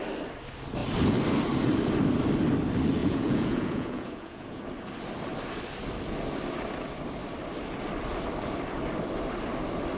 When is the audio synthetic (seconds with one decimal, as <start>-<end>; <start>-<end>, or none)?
3.0-4.6